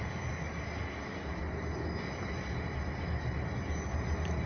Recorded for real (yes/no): yes